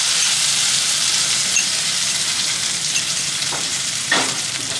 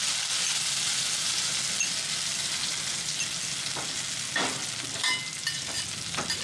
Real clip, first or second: second